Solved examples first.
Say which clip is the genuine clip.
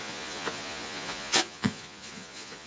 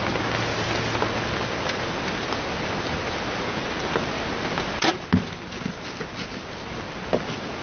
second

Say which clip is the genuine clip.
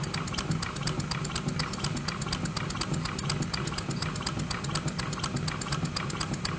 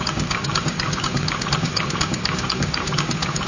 first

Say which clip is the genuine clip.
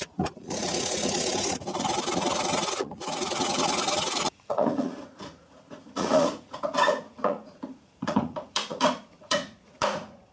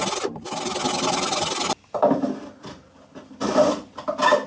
second